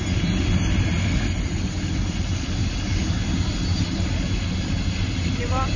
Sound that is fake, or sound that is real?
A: real